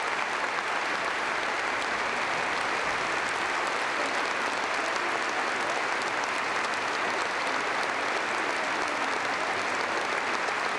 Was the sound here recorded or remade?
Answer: recorded